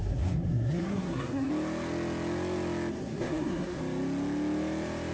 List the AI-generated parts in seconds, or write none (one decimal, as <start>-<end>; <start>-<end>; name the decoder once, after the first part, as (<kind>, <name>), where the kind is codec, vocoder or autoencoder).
0.0-1.5 (codec, SNAC); 3.0-3.8